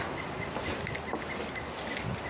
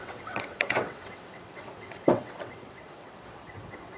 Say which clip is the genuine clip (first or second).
first